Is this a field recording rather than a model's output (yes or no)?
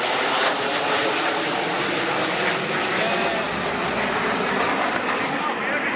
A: yes